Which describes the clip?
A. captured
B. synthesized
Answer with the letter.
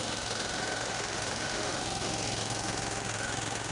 B